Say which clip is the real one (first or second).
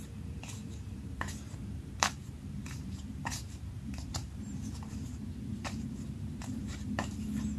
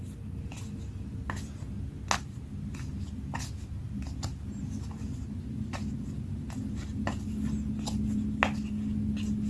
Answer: second